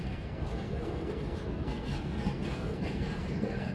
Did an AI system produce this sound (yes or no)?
yes